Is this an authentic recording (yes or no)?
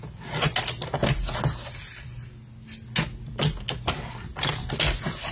yes